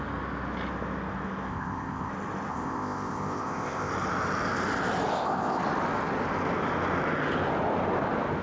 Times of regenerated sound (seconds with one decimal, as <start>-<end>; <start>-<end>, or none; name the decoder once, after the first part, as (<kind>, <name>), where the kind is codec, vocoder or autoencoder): 1.5-2.1 (codec, ZipCodec); 2.5-3.9; 5.1-5.6